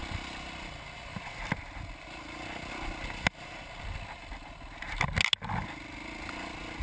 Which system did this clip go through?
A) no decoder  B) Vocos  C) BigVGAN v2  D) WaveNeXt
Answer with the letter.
A